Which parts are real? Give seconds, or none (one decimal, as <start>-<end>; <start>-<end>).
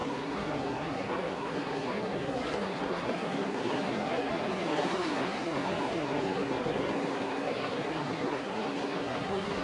none